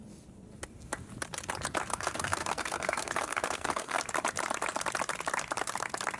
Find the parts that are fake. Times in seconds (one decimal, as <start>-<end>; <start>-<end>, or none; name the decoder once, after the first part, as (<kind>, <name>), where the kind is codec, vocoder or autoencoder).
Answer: 1.9-4.0 (codec, SNAC)